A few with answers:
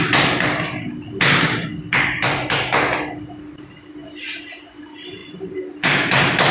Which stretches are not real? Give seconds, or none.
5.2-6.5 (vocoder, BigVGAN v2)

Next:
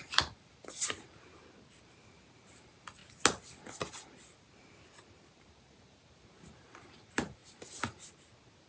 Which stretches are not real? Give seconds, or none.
0.0-3.0 (vocoder, BigVGAN v2); 5.3-7.4

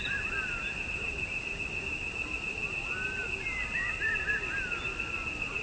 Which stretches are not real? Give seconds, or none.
none

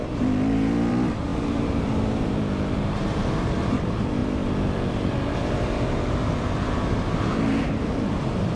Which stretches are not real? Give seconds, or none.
0.0-8.6 (vocoder, BigVGAN v2)

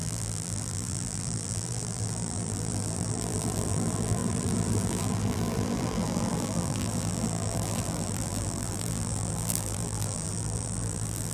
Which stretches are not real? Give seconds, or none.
0.0-11.3 (vocoder, BigVGAN v2)

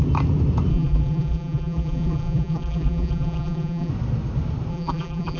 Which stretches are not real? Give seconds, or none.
0.7-3.9 (vocoder, BigVGAN v2); 4.7-5.4

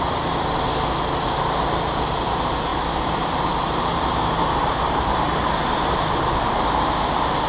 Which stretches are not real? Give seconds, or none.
2.7-5.5 (vocoder, BigVGAN v2)

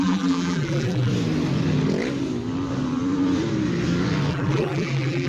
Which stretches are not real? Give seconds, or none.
0.0-1.1 (vocoder, BigVGAN v2); 4.3-5.3